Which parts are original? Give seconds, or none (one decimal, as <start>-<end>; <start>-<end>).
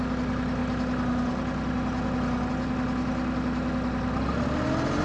0.0-5.0